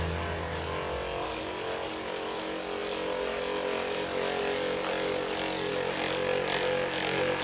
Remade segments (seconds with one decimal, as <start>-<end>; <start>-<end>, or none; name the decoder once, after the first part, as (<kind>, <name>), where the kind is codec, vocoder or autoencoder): none